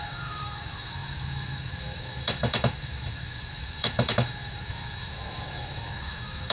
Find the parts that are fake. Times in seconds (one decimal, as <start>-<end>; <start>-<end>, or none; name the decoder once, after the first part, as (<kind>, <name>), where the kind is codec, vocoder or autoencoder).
0.0-6.5 (autoencoder, DAC-VAE)